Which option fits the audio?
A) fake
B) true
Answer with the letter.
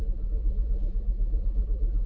A